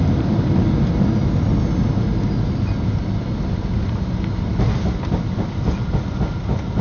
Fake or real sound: real